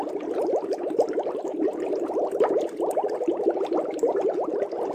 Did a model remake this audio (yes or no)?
no